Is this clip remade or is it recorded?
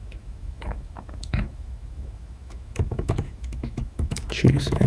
remade